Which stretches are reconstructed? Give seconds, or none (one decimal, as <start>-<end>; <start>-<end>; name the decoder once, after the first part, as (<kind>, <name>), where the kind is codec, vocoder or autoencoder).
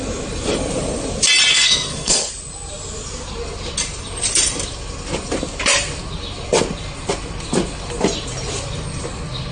1.5-2.3 (codec, SNAC)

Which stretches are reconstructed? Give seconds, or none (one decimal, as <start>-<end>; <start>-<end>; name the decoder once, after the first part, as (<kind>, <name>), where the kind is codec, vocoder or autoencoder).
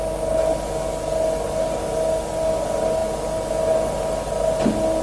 none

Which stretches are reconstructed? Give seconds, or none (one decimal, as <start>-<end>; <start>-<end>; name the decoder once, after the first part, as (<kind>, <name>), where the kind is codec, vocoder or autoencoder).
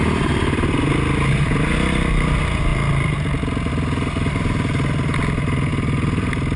none